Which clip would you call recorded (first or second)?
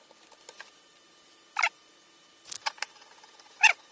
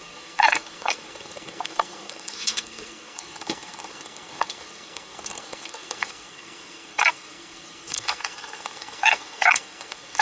first